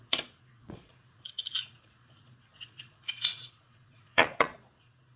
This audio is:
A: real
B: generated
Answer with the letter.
B